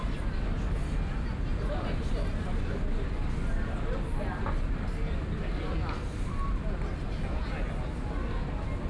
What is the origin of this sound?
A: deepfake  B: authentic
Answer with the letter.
B